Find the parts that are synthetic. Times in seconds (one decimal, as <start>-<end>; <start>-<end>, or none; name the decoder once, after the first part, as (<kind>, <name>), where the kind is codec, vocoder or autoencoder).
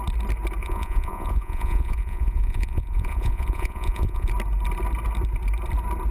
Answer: 0.6-4.3 (vocoder, Vocos)